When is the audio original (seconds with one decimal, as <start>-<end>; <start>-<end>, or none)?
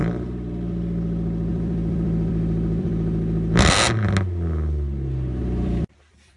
0.5-1.5; 2.9-5.4